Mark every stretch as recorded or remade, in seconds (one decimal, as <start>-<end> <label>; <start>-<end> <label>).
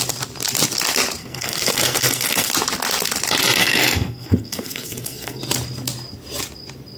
0.0-1.2 recorded; 1.2-2.5 remade; 2.5-3.6 recorded; 3.6-5.4 remade; 5.4-7.0 recorded